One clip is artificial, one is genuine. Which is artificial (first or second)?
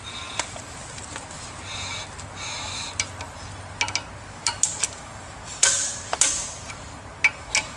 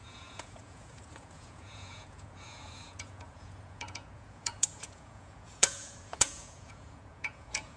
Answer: second